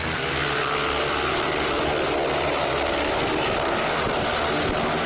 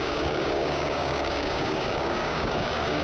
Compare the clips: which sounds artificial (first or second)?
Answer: second